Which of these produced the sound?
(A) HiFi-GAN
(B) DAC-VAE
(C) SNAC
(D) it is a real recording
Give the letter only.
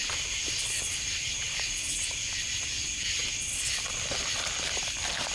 D